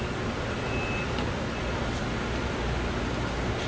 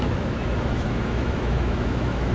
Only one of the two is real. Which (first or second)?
first